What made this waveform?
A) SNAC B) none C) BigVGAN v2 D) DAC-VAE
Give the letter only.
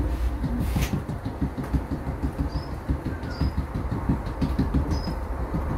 C